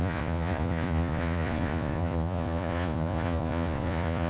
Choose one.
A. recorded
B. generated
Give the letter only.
B